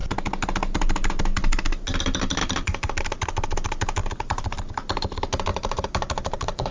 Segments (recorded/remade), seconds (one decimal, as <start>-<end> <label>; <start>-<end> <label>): 0.0-2.4 recorded; 2.4-3.0 remade; 3.0-4.0 recorded; 4.0-4.6 remade; 4.6-5.5 recorded; 5.5-6.7 remade